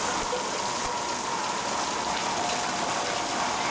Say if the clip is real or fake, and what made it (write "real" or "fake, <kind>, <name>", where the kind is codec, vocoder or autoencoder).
real